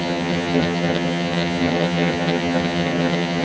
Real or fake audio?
fake